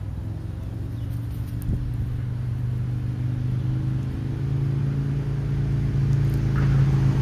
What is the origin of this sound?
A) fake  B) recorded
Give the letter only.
B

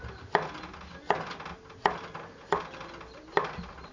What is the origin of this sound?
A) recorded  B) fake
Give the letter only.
A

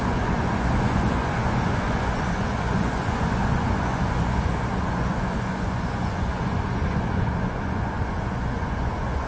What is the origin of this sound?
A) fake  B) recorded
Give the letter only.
A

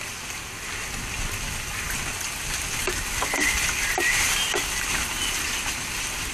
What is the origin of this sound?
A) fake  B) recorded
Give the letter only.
A